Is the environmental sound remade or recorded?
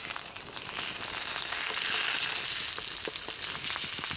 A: recorded